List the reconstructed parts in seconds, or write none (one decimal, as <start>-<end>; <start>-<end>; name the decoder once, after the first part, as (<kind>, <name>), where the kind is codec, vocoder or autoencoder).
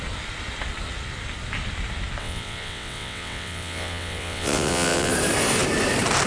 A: 2.2-5.1 (vocoder, WaveNeXt)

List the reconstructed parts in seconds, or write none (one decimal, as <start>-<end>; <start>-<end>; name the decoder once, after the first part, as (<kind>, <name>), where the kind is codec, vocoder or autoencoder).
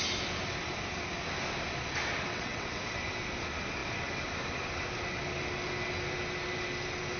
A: 2.3-2.8 (vocoder, WaveNeXt)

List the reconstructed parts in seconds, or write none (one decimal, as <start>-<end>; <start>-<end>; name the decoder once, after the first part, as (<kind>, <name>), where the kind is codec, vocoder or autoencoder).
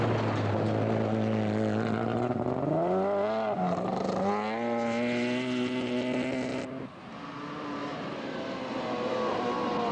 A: none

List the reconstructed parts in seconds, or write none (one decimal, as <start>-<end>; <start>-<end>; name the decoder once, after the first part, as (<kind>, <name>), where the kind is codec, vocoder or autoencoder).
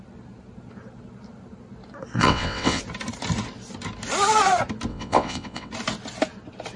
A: 2.2-2.8 (vocoder, WaveNeXt); 4.9-5.7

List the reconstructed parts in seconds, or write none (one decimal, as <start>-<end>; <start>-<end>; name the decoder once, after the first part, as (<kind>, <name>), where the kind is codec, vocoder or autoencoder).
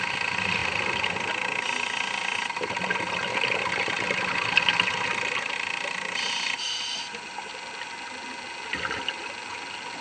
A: none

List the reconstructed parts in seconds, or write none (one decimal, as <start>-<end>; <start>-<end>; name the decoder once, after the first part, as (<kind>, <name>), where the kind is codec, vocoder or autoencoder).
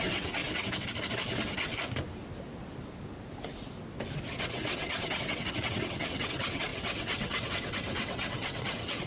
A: 0.0-0.4 (vocoder, WaveNeXt); 4.4-9.1